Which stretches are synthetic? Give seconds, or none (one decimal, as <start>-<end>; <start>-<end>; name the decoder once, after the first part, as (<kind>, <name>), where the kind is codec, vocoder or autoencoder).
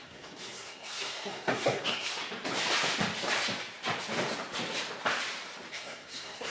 0.0-2.1 (codec, SNAC); 5.7-6.5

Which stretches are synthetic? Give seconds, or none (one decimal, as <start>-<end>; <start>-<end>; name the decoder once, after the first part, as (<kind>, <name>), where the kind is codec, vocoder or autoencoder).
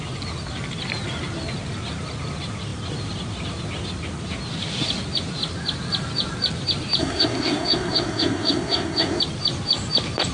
7.0-9.2 (codec, SNAC)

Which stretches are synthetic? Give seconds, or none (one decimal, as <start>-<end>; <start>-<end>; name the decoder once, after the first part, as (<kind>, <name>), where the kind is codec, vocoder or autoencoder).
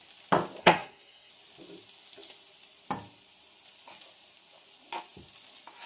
0.6-1.3 (codec, SNAC)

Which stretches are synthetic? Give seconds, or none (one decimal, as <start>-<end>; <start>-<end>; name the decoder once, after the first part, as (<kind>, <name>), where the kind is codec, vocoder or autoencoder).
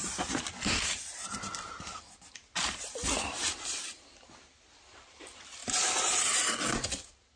none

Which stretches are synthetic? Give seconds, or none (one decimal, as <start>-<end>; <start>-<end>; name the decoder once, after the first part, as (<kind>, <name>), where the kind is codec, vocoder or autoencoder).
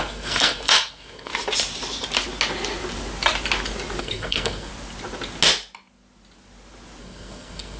0.0-1.3 (codec, SNAC); 4.0-4.7; 7.0-7.8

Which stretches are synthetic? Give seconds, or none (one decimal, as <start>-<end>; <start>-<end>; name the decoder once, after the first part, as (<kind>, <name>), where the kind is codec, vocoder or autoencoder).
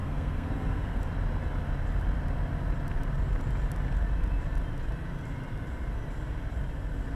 0.0-1.0 (codec, SNAC)